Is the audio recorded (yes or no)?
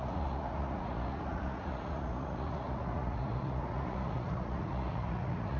no